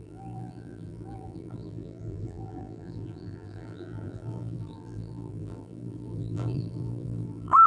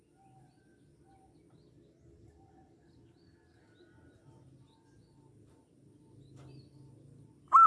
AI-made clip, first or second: first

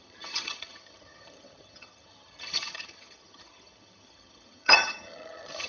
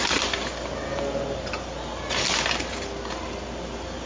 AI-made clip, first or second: first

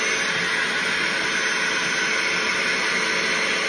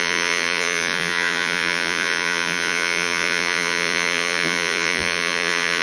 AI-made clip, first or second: second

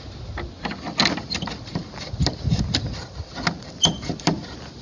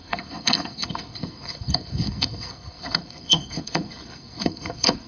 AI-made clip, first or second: second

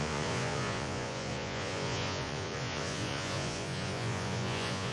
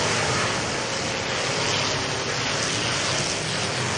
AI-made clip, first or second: first